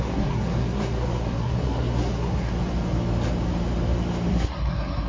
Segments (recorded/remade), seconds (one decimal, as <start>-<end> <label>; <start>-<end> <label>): 0.0-2.5 remade; 2.5-4.3 recorded; 4.3-5.1 remade